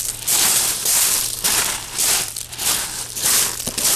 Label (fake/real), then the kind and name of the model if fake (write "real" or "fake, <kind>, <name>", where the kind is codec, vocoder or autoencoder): real